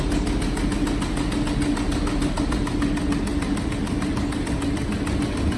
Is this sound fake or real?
real